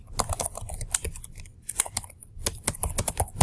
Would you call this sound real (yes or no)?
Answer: yes